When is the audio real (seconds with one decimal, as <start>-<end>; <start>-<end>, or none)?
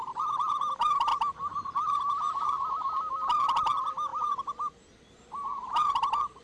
0.0-6.4